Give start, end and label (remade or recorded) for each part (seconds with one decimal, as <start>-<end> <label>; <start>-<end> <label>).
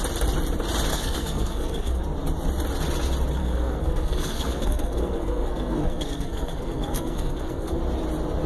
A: 0.0-0.9 recorded; 0.9-2.0 remade; 2.0-3.4 recorded; 3.4-7.8 remade; 7.8-8.5 recorded